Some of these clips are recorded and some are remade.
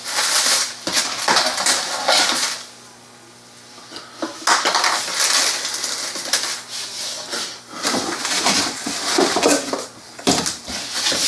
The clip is recorded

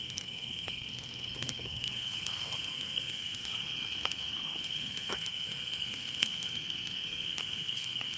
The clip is remade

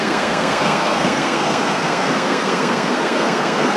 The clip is remade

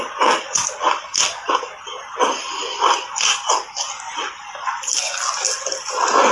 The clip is recorded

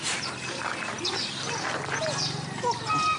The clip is recorded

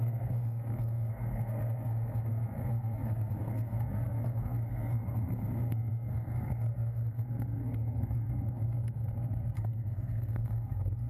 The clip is remade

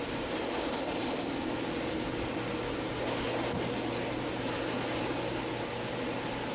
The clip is recorded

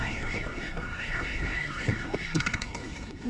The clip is remade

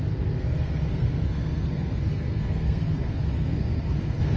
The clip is remade